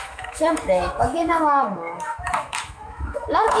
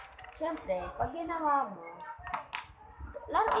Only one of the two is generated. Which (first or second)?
first